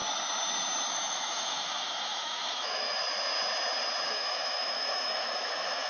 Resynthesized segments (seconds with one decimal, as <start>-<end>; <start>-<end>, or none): 0.9-3.0; 4.1-5.9